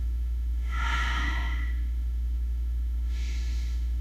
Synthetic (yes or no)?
yes